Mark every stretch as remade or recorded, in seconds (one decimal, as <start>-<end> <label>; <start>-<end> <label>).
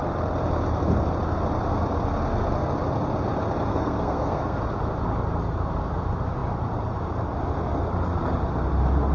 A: 0.0-3.7 recorded; 3.7-4.6 remade; 4.6-9.1 recorded